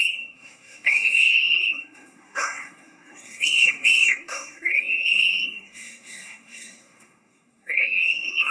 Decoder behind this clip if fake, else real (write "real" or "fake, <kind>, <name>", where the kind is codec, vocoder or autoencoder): fake, codec, SNAC